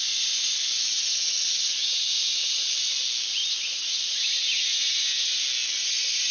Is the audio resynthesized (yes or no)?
no